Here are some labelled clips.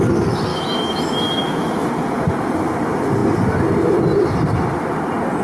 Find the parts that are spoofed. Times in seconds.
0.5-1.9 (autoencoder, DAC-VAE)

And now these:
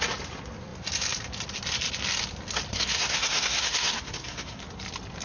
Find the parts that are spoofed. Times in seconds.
2.7-4.6 (codec, SNAC)

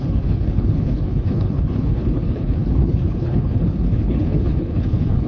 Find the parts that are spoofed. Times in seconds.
0.0-5.3 (codec, HILCodec)

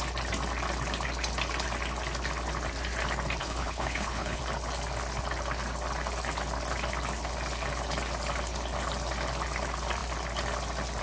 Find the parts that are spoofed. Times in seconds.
3.4-4.4 (codec, HILCodec)

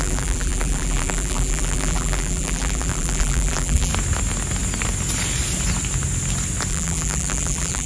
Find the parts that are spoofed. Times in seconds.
0.0-3.9 (vocoder, BigVGAN v2); 6.7-7.9

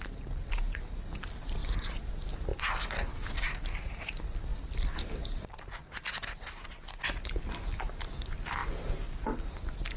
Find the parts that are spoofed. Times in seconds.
none

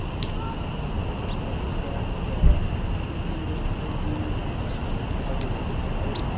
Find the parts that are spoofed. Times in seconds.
none